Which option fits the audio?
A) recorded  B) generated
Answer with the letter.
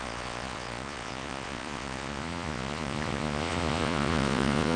B